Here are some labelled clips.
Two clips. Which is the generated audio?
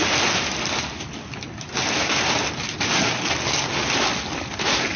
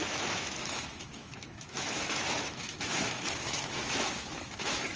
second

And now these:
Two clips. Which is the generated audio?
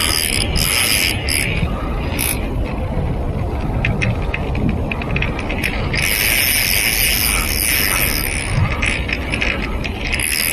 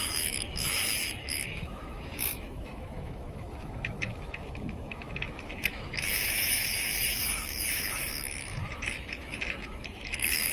second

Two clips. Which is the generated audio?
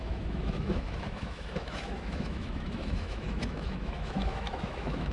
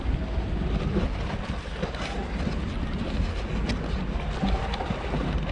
first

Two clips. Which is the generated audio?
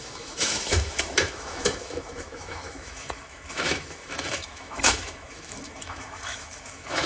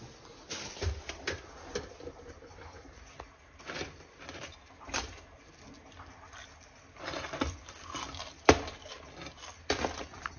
first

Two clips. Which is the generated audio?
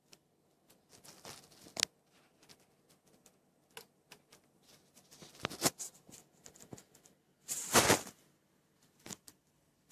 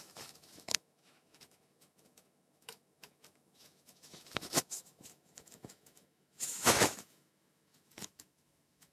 second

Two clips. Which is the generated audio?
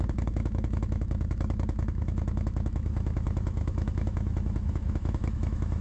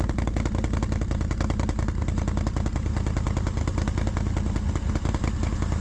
first